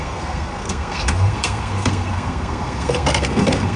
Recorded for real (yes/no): no